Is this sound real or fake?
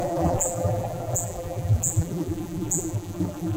fake